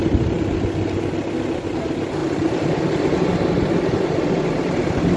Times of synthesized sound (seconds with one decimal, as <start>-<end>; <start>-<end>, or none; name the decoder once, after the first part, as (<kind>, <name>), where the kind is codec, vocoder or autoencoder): 2.2-2.8 (vocoder, BigVGAN v2)